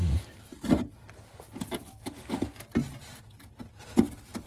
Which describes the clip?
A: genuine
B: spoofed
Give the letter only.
A